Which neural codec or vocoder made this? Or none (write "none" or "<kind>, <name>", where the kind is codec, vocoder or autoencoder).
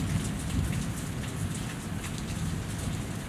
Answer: none